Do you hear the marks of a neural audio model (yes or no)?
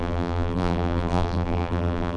yes